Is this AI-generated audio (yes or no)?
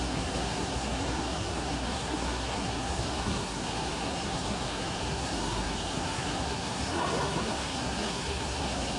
yes